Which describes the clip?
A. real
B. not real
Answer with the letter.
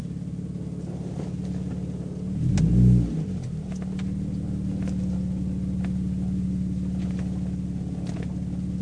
A